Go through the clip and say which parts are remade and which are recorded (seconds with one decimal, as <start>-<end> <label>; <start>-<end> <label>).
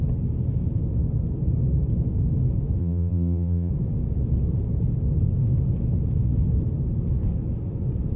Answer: 0.0-2.8 recorded; 2.8-3.7 remade; 3.7-8.2 recorded